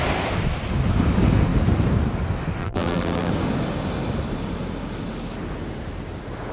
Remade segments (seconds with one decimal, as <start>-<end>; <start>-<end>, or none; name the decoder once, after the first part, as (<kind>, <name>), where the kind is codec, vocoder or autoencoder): 2.6-3.3 (vocoder, BigVGAN v2)